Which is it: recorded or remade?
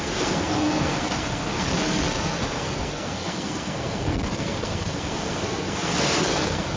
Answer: remade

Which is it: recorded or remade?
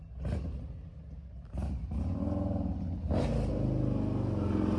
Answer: recorded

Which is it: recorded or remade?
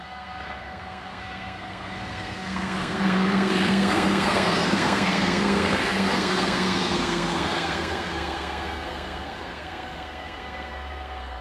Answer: remade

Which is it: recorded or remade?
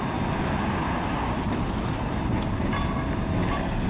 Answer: recorded